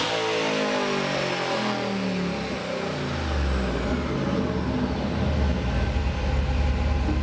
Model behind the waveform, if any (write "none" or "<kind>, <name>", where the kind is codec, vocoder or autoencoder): none